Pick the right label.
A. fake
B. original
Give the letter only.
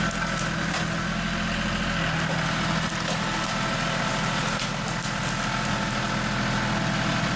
B